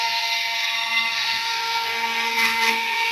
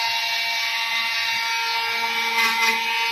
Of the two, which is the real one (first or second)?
second